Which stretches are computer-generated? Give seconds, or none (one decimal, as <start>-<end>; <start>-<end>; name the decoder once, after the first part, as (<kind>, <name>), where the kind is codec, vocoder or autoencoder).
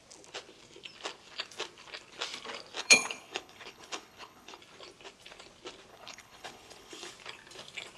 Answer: 2.8-4.6 (codec, HILCodec); 5.9-7.1